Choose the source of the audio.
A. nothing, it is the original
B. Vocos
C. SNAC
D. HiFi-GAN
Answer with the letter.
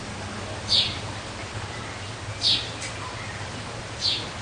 A